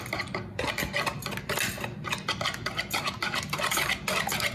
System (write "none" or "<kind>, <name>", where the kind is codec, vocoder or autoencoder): none